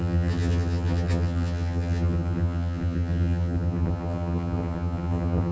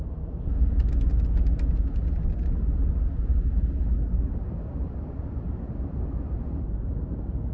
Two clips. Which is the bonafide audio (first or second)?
second